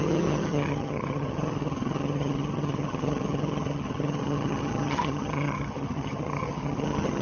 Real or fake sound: fake